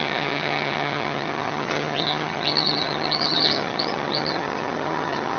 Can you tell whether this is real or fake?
fake